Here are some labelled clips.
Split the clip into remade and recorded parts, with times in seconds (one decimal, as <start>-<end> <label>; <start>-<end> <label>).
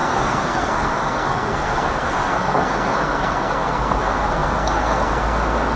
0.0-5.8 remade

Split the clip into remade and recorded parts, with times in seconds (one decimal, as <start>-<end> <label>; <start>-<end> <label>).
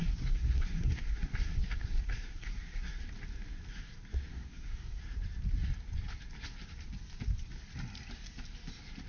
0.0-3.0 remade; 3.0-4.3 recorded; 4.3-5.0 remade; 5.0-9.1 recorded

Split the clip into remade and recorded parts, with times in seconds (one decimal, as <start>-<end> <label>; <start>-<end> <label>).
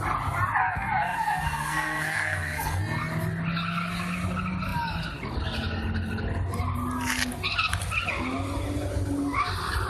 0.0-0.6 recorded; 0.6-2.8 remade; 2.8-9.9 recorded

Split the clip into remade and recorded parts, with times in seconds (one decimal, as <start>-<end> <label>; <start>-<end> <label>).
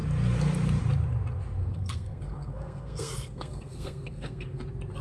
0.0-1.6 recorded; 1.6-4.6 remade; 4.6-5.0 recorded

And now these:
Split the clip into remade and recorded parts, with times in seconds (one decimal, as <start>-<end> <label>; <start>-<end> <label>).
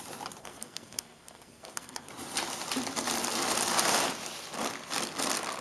0.0-0.4 recorded; 0.4-2.1 remade; 2.1-5.6 recorded